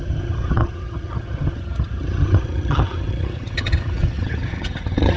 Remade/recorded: remade